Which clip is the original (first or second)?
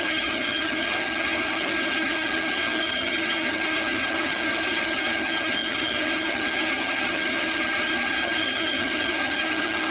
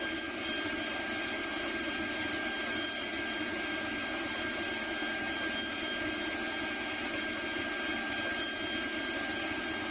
second